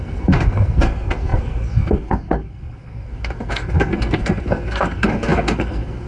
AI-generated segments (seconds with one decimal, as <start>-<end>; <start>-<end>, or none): 0.0-6.1